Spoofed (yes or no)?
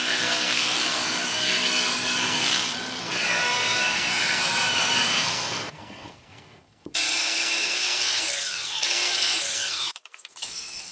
yes